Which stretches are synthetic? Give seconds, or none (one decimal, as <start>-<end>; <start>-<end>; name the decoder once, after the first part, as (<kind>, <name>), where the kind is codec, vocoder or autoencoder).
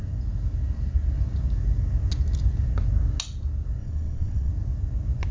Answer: 3.8-4.5 (vocoder, WaveNeXt)